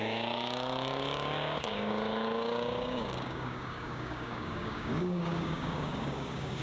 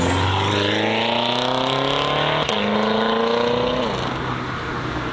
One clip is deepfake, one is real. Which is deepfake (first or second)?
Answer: first